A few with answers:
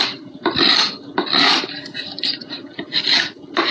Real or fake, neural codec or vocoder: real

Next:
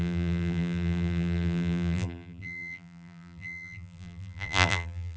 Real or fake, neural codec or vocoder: fake, vocoder, BigVGAN v2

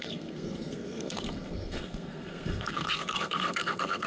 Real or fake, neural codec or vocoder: fake, codec, SNAC